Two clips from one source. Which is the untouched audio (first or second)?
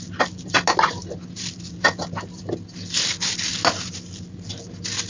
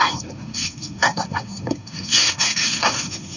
first